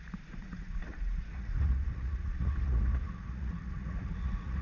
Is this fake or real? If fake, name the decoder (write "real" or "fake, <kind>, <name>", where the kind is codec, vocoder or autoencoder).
fake, vocoder, Vocos